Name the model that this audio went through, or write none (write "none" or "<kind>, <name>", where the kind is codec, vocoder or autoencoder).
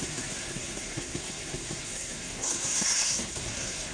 codec, SNAC